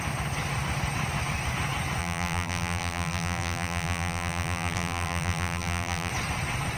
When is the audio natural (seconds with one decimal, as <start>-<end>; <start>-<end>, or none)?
0.0-2.0; 6.1-6.8